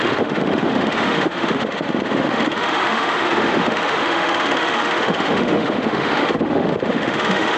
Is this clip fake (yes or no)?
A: yes